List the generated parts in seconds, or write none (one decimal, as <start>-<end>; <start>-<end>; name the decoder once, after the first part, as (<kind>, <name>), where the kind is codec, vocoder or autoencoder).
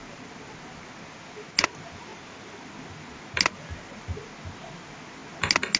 none